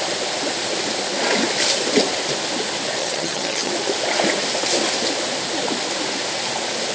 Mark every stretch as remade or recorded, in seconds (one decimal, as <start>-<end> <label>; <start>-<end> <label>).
0.0-3.0 recorded; 3.0-3.7 remade; 3.7-6.9 recorded